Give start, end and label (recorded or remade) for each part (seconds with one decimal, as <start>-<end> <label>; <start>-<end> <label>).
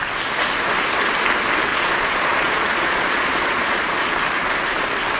0.0-1.7 recorded; 1.7-4.1 remade; 4.1-5.2 recorded